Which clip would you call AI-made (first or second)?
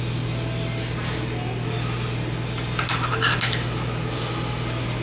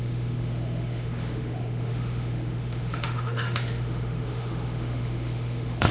second